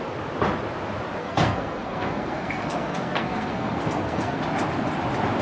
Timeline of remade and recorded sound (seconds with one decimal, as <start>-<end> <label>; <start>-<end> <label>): 0.0-1.2 recorded; 1.2-4.4 remade; 4.4-5.4 recorded